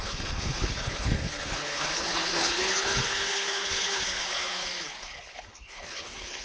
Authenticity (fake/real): fake